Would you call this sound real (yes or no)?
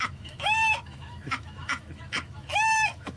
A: no